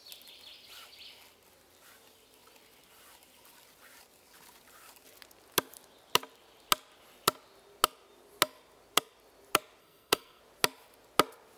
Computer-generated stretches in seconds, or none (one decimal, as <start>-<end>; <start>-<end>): 9.8-10.4